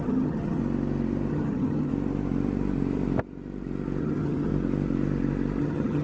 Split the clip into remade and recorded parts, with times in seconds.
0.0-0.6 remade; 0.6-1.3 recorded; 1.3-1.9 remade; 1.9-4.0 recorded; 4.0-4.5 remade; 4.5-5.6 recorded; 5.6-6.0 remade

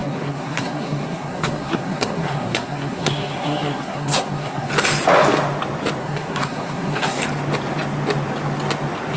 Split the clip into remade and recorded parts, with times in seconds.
0.0-4.7 remade; 4.7-6.0 recorded; 6.0-7.2 remade; 7.2-9.2 recorded

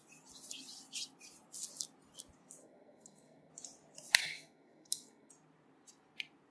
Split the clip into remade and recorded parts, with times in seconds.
0.0-2.6 recorded; 2.6-3.5 remade; 3.5-4.2 recorded; 4.2-5.3 remade; 5.3-6.5 recorded